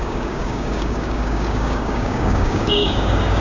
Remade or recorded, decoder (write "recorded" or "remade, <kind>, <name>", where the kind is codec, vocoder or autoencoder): remade, codec, DAC